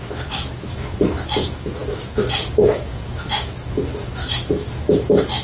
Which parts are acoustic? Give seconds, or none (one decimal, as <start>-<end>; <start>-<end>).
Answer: none